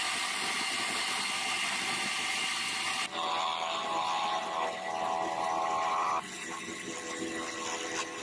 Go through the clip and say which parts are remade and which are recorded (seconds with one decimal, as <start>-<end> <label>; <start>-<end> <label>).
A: 0.0-8.2 recorded